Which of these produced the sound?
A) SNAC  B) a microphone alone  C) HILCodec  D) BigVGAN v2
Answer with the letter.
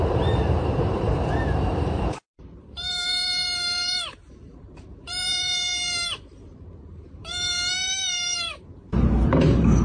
D